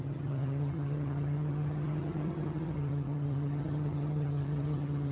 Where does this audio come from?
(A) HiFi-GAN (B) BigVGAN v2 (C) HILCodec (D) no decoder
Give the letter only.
A